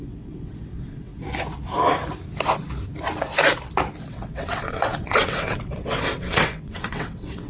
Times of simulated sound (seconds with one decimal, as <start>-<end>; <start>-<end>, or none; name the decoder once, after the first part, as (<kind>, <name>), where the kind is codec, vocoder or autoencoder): 0.0-1.1 (vocoder, WaveNeXt); 4.0-7.5